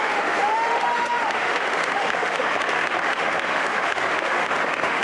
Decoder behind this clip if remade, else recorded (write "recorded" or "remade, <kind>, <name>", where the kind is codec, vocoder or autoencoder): remade, autoencoder, DAC-VAE